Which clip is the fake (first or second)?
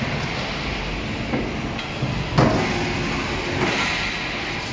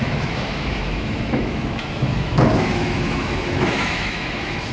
second